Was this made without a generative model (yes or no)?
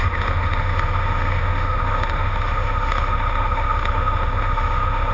no